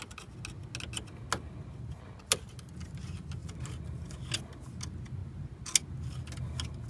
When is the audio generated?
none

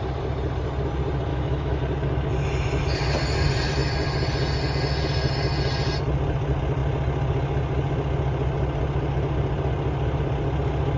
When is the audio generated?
1.3-1.8

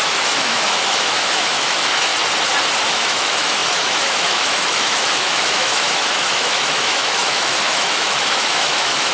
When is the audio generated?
0.0-2.1; 2.9-9.1

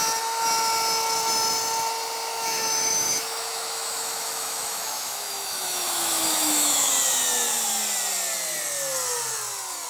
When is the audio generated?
2.3-6.9

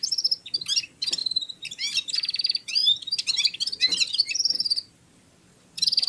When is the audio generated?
none

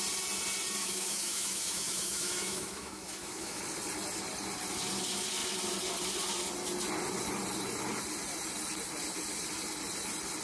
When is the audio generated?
0.8-3.6

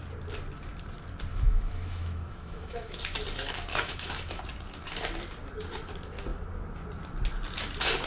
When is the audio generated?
1.3-3.0; 3.7-4.4

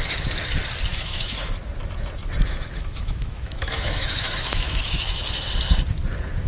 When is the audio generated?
0.9-1.6; 2.4-5.4